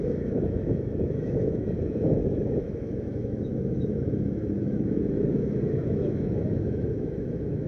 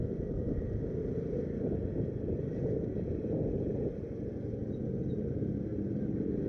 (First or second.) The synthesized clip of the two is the first